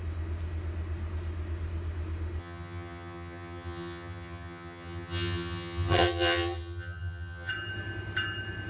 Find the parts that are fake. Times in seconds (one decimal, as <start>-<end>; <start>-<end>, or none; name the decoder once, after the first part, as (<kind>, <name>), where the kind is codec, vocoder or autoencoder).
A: 2.4-7.5 (vocoder, HiFi-GAN)